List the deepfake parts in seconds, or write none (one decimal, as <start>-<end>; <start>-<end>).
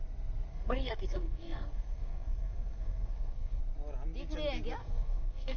0.5-3.6; 4.8-5.6